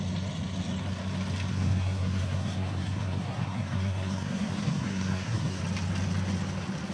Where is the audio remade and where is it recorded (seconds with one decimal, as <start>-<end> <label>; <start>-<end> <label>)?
0.0-1.5 recorded; 1.5-5.6 remade; 5.6-6.9 recorded